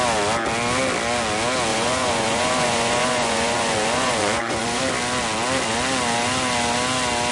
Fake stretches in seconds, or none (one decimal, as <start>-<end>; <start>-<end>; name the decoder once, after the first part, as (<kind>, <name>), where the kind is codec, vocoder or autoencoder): 1.7-4.8 (vocoder, Vocos)